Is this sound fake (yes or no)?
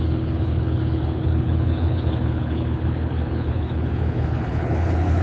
yes